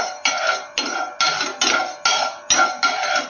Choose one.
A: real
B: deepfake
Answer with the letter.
A